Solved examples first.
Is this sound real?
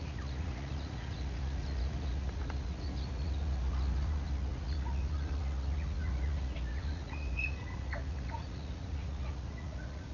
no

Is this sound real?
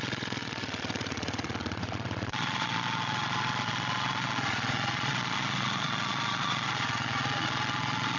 no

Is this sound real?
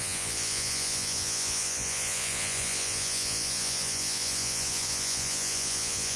no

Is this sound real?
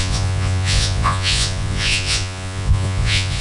no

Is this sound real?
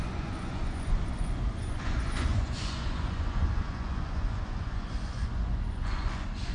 no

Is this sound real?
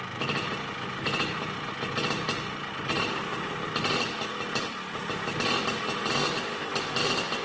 yes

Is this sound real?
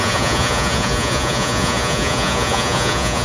no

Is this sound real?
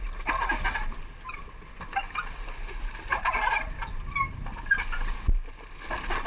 yes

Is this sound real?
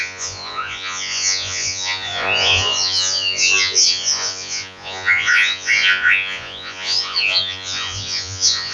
no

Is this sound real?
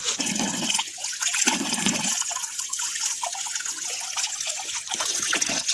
no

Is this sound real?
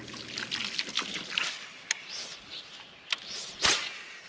yes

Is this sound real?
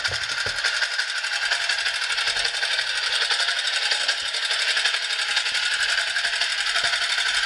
yes